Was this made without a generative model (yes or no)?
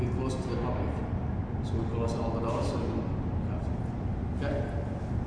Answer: yes